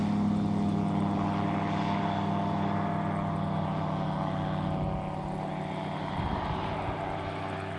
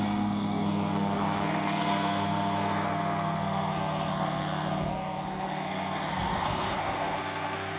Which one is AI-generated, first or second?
second